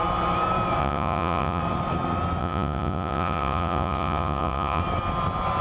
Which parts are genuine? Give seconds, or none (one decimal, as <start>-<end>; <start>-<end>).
0.0-0.8; 1.6-2.4; 4.8-5.6